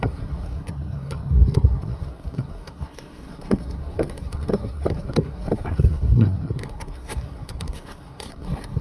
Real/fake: fake